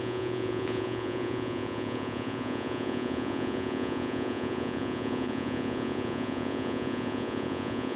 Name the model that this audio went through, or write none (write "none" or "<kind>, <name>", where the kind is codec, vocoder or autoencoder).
vocoder, Vocos